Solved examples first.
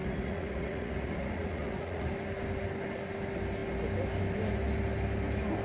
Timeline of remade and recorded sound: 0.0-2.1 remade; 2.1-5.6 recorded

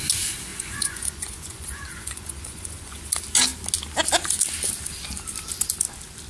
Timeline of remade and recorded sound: 0.0-0.5 recorded; 0.5-3.0 remade; 3.0-6.3 recorded

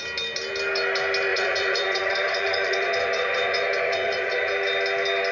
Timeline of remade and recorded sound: 0.0-1.3 recorded; 1.3-4.5 remade; 4.5-5.3 recorded

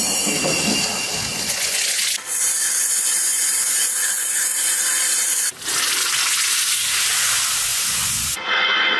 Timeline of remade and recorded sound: 0.0-1.3 recorded; 1.3-2.0 remade; 2.0-7.7 recorded; 7.7-9.0 remade

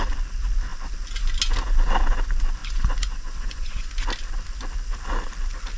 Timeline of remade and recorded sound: 0.0-2.6 recorded; 2.6-3.9 remade; 3.9-5.8 recorded

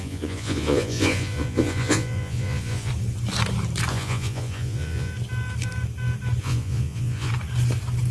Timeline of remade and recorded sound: 0.0-2.9 remade; 2.9-3.9 recorded; 3.9-5.1 remade; 5.1-6.4 recorded; 6.4-7.3 remade; 7.3-8.1 recorded

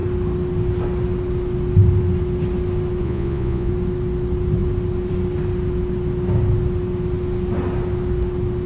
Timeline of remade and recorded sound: 0.0-3.0 recorded; 3.0-3.7 remade; 3.7-8.7 recorded

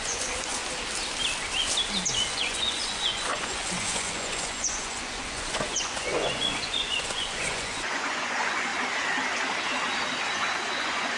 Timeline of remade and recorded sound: 0.0-0.6 remade; 0.6-2.3 recorded; 2.3-8.7 remade; 8.7-10.3 recorded; 10.3-11.2 remade